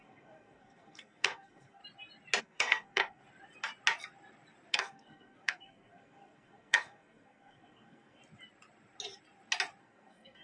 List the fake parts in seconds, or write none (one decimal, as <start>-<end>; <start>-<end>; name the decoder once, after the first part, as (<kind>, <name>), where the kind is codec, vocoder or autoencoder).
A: 0.0-1.8 (codec, SNAC); 2.4-3.2; 4.7-8.2; 9.8-10.4